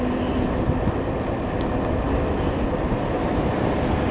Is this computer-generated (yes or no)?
no